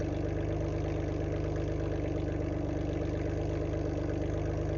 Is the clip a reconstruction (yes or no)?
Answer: no